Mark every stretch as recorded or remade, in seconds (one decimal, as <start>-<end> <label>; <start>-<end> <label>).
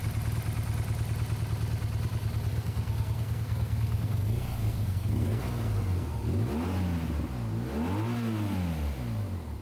0.0-2.5 recorded; 2.5-6.2 remade; 6.2-9.6 recorded